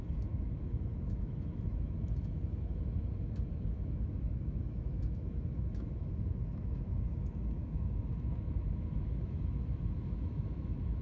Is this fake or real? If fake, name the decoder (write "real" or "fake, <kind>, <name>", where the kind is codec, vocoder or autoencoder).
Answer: fake, autoencoder, DAC-VAE